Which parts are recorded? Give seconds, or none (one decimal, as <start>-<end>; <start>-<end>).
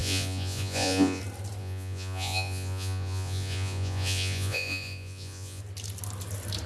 1.2-1.6; 5.6-6.7